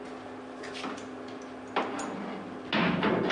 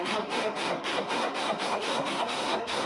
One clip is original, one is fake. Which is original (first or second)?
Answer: first